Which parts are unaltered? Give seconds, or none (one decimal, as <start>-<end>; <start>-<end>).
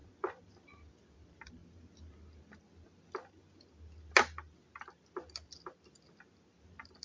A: 0.0-7.0